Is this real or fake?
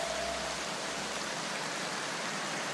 real